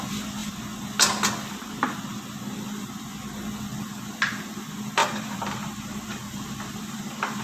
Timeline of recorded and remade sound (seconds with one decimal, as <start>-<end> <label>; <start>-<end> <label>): 0.0-5.0 recorded; 5.0-7.4 remade